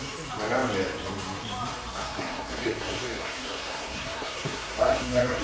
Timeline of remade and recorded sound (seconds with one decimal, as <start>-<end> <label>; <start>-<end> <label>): 0.0-1.9 recorded; 1.9-5.4 remade